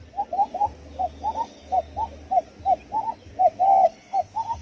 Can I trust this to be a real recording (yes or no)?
yes